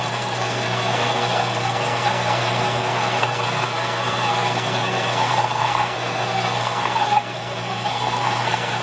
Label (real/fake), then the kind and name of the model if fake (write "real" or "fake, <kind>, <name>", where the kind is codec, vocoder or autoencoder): fake, codec, SNAC